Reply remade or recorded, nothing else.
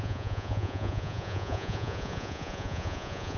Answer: remade